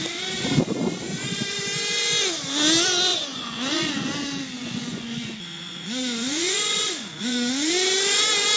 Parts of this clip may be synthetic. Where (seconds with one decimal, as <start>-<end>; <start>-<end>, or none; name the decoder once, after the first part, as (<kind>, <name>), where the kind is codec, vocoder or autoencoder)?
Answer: 3.1-4.1 (vocoder, Vocos); 4.6-7.7